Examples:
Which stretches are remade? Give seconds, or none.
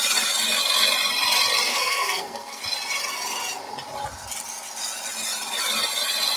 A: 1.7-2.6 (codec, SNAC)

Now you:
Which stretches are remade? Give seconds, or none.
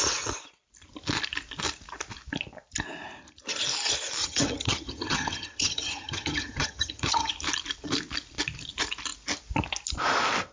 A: 4.2-7.3 (vocoder, HiFi-GAN)